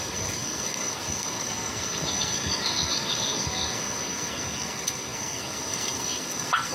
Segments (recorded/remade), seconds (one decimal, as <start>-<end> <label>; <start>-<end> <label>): 0.0-6.7 remade

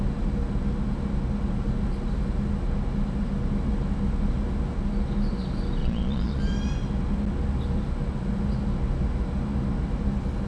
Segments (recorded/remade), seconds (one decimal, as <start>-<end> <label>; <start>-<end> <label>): 0.0-5.8 recorded; 5.8-6.4 remade; 6.4-10.5 recorded

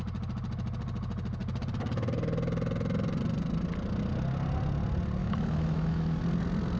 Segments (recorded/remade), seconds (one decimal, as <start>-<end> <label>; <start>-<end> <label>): 0.0-5.2 recorded; 5.2-6.2 remade; 6.2-6.8 recorded

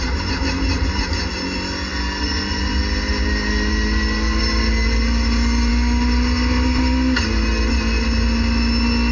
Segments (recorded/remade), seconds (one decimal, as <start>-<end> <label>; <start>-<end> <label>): 0.0-9.1 recorded